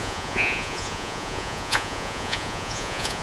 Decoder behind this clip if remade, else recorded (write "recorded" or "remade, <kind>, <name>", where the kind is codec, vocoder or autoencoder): remade, vocoder, Vocos